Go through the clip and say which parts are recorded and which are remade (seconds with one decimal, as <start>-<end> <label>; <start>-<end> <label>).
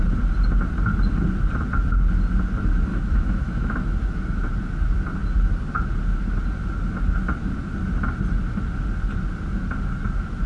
0.0-2.9 recorded; 2.9-4.5 remade; 4.5-10.5 recorded